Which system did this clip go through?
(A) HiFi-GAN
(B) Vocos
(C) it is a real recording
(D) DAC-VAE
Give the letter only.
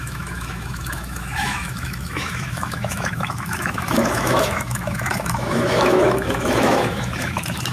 D